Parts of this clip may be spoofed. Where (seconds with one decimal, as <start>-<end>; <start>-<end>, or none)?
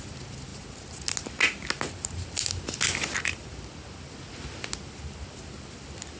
none